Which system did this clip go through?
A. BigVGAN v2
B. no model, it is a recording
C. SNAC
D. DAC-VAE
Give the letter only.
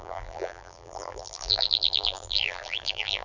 A